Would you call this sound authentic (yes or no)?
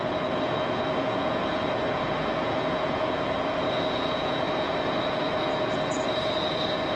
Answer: no